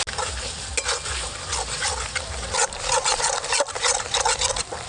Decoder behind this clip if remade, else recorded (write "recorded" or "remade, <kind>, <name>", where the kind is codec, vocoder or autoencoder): recorded